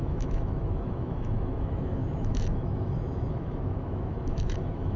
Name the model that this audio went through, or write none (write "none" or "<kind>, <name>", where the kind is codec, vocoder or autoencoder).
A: autoencoder, DAC-VAE